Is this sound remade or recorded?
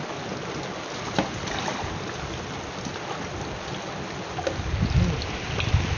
recorded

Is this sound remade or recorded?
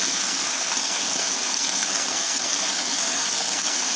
remade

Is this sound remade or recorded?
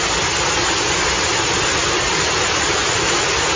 recorded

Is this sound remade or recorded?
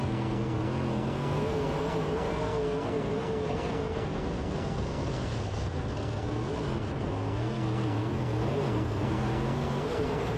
remade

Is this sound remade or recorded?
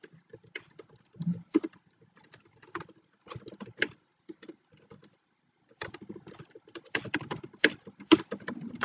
recorded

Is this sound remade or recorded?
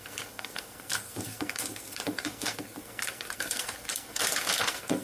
remade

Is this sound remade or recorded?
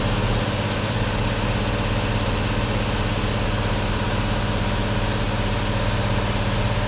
recorded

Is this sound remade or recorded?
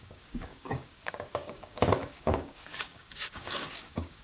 remade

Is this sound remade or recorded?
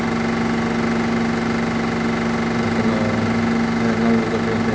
recorded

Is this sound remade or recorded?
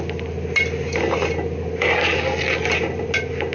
recorded